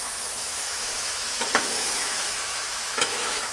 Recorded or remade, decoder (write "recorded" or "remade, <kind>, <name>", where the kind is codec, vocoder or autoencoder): remade, autoencoder, DAC-VAE